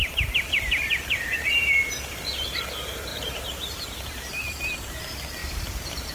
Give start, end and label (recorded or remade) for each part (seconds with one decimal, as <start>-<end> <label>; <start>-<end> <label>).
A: 0.0-1.6 remade; 1.6-3.1 recorded; 3.1-4.7 remade; 4.7-5.4 recorded; 5.4-6.1 remade